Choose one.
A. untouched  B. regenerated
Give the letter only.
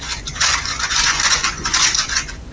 B